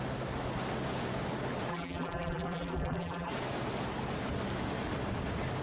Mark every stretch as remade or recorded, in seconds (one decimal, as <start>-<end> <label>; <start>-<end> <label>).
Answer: 0.0-1.7 recorded; 1.7-3.3 remade; 3.3-5.6 recorded